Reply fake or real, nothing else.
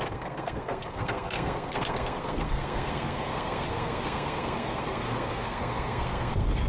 fake